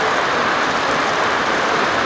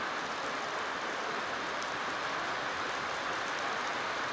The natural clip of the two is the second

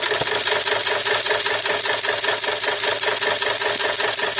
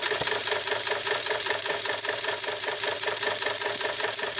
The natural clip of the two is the first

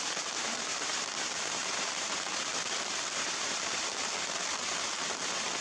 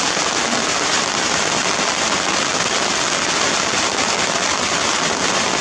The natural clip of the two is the second